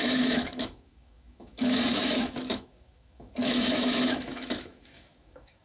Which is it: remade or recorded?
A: remade